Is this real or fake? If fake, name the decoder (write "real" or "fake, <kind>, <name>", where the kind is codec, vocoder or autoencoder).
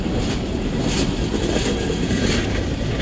real